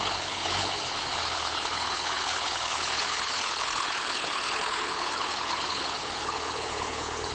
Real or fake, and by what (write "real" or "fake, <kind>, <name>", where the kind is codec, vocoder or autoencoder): fake, codec, HILCodec